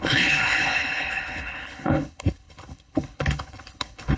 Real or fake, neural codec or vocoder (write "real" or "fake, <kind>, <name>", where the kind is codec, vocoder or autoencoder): fake, codec, HILCodec